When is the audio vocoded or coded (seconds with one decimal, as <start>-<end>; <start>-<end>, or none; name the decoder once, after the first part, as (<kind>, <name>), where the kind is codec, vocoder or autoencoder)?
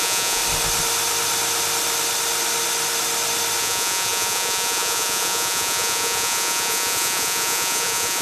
0.0-0.4 (vocoder, Vocos); 3.6-8.2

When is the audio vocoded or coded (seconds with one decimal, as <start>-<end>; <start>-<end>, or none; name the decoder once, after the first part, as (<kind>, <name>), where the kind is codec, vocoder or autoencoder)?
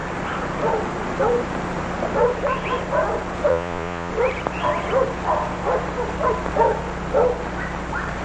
3.5-4.1 (vocoder, Vocos)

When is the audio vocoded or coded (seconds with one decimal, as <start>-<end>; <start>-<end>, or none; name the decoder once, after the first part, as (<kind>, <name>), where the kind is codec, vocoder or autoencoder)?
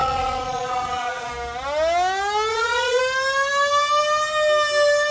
0.0-1.3 (vocoder, Vocos); 2.5-3.0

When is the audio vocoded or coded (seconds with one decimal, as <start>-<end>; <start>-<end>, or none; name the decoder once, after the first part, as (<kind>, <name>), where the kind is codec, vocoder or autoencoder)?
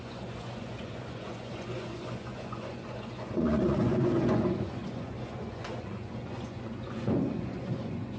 0.0-8.2 (vocoder, Vocos)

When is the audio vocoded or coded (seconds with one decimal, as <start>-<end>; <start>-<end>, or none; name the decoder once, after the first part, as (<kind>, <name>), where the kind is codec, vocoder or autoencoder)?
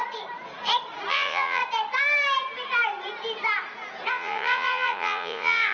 1.1-1.6 (vocoder, Vocos); 4.1-5.7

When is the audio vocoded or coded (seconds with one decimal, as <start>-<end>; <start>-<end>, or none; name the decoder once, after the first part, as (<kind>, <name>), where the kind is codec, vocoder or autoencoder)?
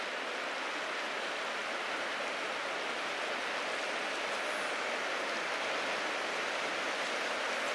none